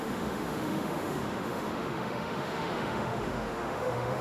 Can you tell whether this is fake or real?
fake